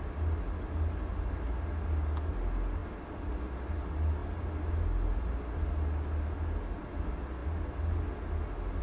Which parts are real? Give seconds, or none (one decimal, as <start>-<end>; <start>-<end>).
0.0-8.8